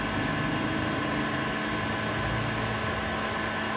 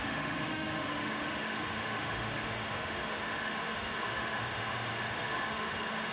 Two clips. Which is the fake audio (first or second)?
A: second